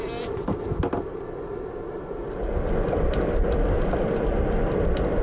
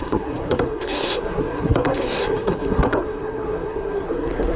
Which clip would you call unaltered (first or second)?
first